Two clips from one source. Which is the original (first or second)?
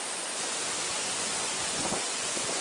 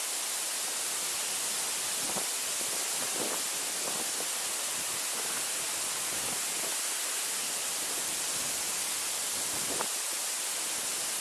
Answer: second